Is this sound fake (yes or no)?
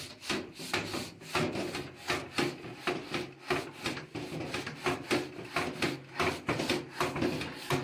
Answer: no